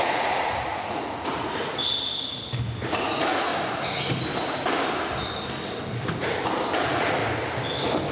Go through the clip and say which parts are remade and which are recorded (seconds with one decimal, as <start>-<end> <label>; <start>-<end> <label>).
0.0-1.8 remade; 1.8-3.0 recorded; 3.0-3.5 remade; 3.5-6.8 recorded; 6.8-7.2 remade; 7.2-8.1 recorded